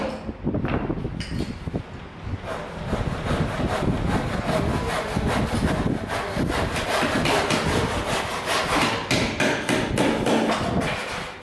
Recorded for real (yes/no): yes